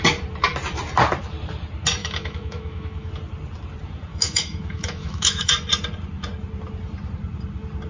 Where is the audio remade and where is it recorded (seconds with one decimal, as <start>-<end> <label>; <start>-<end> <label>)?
0.0-2.0 recorded; 2.0-3.1 remade; 3.1-4.1 recorded; 4.1-5.5 remade; 5.5-7.9 recorded